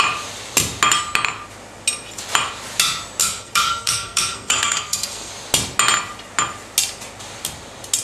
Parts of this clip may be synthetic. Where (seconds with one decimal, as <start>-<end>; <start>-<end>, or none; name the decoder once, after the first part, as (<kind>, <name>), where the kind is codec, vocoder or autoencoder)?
3.2-5.3 (codec, SNAC)